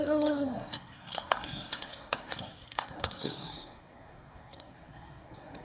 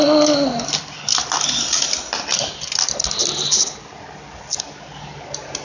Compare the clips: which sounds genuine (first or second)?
second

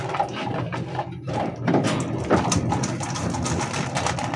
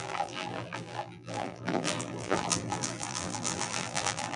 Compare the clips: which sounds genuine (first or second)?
first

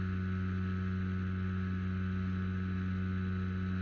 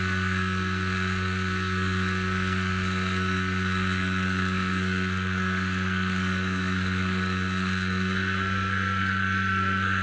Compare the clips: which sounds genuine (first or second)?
first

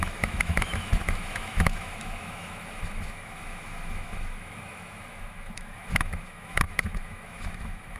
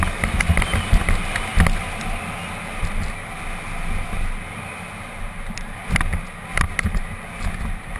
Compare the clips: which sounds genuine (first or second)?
second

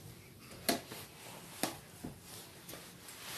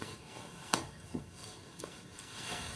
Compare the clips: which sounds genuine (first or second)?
first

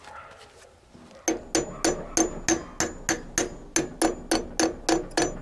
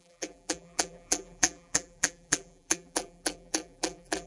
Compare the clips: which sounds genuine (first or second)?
first